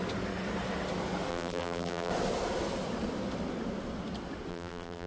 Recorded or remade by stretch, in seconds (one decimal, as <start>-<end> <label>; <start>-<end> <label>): 0.0-1.3 recorded; 1.3-2.1 remade; 2.1-4.5 recorded; 4.5-5.1 remade